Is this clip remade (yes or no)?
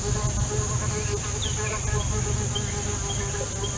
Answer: no